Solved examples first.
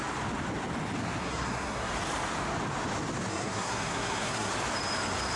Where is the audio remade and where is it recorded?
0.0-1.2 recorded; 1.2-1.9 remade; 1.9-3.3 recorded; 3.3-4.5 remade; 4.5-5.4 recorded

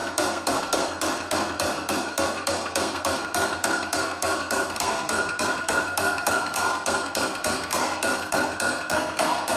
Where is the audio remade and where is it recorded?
0.0-9.6 remade

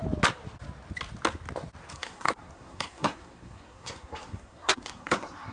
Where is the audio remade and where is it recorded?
0.0-1.9 recorded; 1.9-5.5 remade